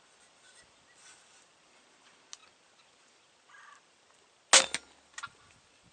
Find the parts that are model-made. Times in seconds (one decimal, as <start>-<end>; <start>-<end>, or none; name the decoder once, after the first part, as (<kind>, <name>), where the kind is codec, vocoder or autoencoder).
none